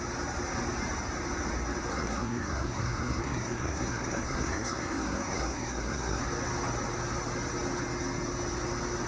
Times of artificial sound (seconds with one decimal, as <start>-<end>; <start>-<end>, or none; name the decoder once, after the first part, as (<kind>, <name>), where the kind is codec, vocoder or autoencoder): 1.9-6.2 (codec, SNAC)